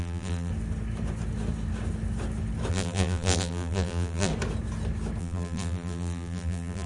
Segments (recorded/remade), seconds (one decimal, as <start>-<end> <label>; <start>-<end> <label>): 0.0-0.5 remade; 0.5-2.7 recorded; 2.7-4.3 remade; 4.3-5.2 recorded; 5.2-6.9 remade